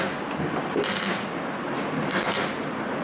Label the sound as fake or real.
fake